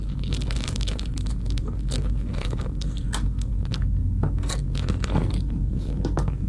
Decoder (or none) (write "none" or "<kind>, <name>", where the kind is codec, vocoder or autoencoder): codec, SNAC